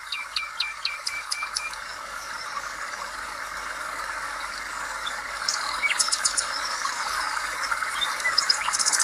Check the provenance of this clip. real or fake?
fake